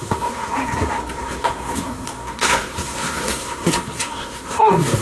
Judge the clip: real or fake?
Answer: fake